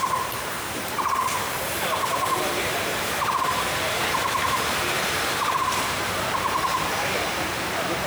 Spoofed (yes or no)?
yes